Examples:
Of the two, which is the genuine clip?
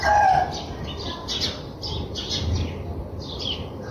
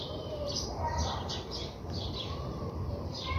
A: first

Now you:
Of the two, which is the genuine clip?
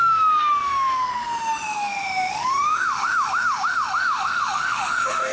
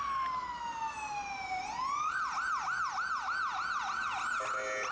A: second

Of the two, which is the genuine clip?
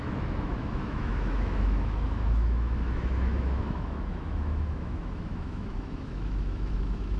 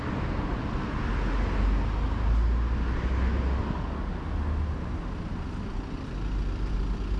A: second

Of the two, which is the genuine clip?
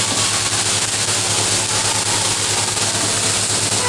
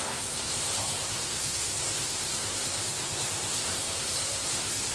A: first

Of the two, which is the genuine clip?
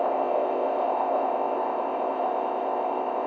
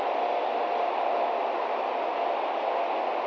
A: second